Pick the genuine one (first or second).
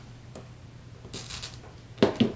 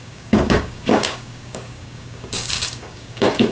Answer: first